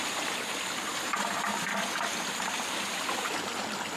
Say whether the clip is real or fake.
real